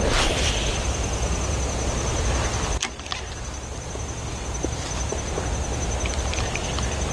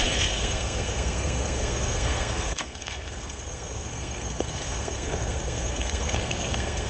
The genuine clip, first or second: first